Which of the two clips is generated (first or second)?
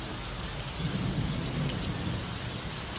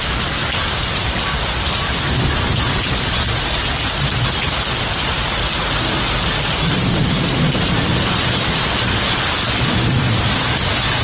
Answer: second